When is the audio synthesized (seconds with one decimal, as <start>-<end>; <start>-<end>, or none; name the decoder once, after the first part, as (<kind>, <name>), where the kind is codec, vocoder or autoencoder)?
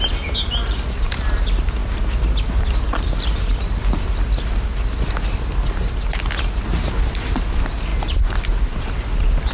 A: none